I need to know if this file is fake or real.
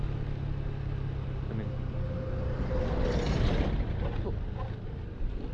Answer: real